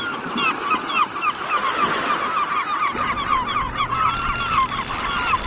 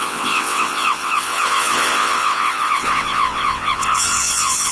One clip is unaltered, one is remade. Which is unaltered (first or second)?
first